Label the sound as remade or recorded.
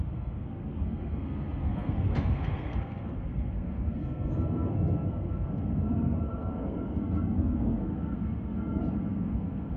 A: remade